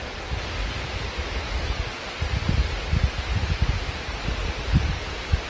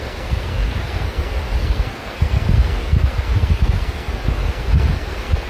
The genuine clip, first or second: first